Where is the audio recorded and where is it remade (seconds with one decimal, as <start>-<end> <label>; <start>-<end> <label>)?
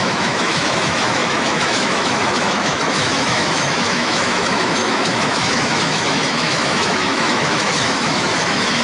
0.0-8.8 remade